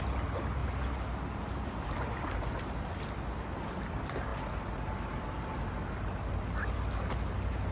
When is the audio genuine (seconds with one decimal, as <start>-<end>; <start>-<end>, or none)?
0.0-7.7

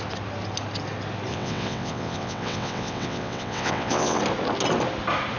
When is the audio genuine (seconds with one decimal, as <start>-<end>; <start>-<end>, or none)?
0.0-1.3; 4.2-5.4

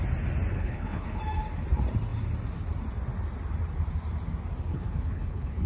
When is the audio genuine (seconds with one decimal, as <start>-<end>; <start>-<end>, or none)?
0.0-0.5; 1.2-4.7

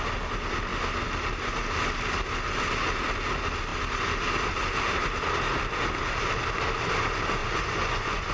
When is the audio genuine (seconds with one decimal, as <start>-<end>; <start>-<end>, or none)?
0.0-7.4